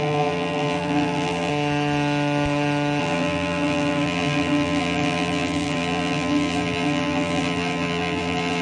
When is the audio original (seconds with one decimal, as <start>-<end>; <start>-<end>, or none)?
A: 1.5-3.0